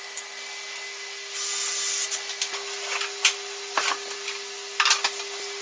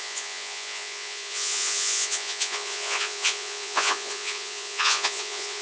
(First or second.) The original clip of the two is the first